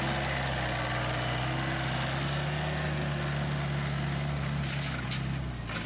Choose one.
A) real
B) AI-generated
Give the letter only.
A